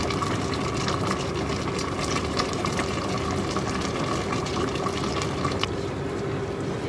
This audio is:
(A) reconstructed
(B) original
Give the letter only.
B